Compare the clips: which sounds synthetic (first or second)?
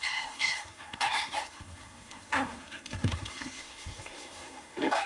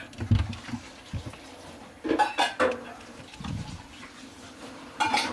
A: first